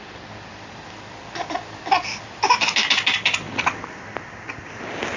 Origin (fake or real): real